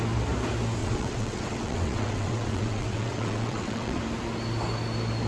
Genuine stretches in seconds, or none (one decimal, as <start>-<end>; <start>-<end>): 0.0-0.8; 4.0-5.3